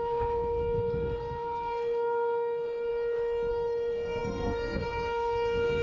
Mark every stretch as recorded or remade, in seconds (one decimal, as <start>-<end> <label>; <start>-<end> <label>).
0.0-2.9 remade; 2.9-3.5 recorded; 3.5-5.8 remade